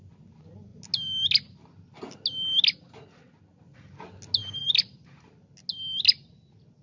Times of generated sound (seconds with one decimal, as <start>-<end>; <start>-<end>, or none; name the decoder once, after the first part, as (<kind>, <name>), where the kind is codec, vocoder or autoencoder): none